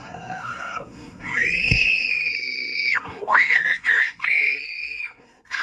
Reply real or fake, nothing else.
fake